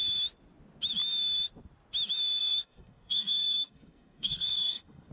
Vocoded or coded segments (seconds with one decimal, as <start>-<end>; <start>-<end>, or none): 2.4-5.1